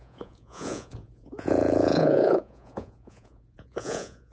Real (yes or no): no